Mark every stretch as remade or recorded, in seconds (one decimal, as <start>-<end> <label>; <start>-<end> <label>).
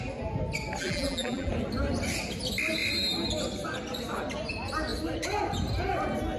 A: 0.0-0.8 recorded; 0.8-1.5 remade; 1.5-6.4 recorded